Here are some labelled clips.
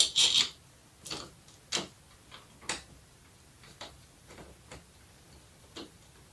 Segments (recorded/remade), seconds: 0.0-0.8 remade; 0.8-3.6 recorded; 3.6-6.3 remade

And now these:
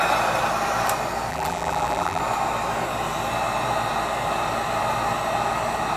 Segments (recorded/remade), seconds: 0.0-1.3 recorded; 1.3-2.2 remade; 2.2-6.0 recorded

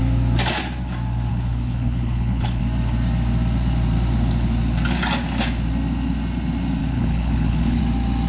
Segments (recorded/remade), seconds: 0.0-1.3 recorded; 1.3-2.6 remade; 2.6-6.8 recorded; 6.8-7.8 remade; 7.8-8.3 recorded

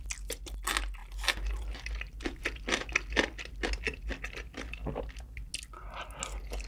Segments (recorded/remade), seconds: 0.0-6.7 recorded

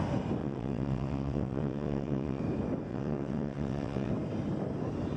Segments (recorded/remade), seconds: 0.0-0.4 recorded; 0.4-2.4 remade; 2.4-2.9 recorded; 2.9-4.1 remade; 4.1-5.2 recorded

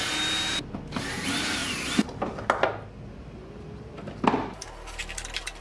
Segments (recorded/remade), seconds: 0.0-5.6 recorded